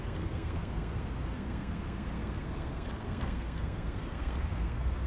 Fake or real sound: fake